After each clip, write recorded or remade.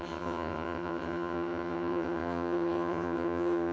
remade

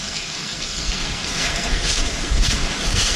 remade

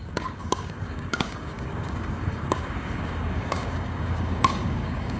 remade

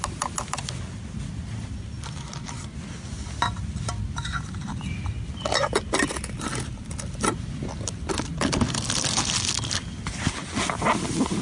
recorded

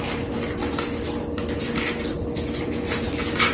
recorded